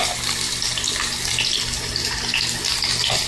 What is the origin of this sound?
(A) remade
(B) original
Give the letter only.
B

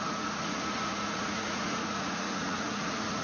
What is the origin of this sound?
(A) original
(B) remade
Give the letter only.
B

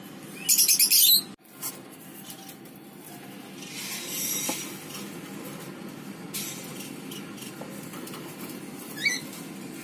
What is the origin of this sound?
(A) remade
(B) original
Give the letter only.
B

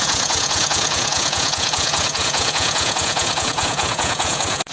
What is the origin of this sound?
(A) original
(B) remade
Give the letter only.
B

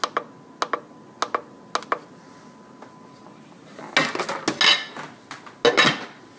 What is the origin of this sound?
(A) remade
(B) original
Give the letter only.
B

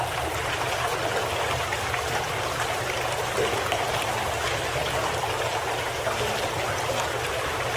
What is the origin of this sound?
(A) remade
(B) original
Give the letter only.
B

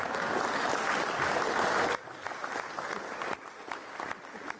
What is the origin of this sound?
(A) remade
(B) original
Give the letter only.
B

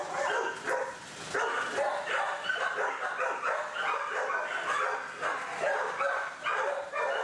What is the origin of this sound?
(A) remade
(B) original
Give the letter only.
B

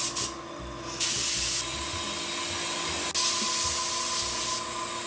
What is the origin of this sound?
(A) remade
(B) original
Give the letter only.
B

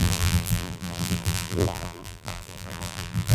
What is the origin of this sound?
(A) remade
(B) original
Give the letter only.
A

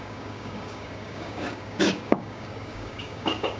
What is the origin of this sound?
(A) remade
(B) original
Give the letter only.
A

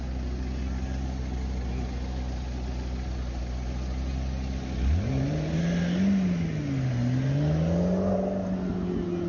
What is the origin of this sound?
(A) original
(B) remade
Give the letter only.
A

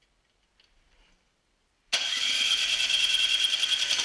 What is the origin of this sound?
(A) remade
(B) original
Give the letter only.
B